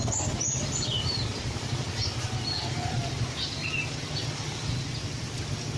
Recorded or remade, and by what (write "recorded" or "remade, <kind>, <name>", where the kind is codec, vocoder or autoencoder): recorded